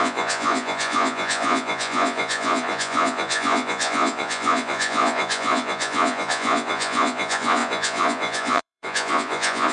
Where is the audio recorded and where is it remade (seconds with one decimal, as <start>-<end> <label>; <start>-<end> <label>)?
0.0-9.7 remade